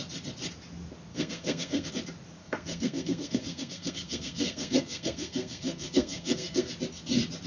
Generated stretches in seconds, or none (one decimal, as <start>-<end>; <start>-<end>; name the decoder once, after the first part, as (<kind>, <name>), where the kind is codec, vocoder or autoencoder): 1.1-1.9 (codec, SNAC); 2.4-6.7